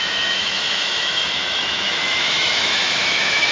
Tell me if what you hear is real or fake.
fake